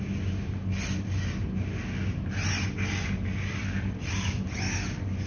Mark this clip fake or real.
real